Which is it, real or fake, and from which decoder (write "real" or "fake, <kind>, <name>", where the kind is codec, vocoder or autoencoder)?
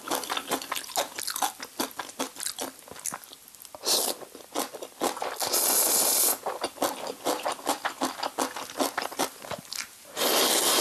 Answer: real